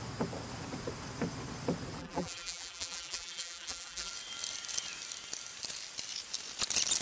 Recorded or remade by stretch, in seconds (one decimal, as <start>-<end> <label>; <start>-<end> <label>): 0.0-2.0 recorded; 2.0-4.1 remade; 4.1-7.0 recorded